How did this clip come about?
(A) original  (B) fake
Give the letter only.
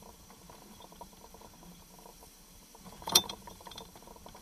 B